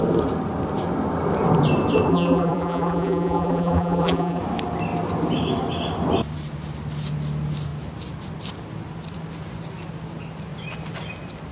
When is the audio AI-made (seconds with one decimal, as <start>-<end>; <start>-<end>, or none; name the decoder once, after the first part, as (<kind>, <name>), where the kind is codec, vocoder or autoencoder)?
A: 2.1-4.4 (vocoder, BigVGAN v2)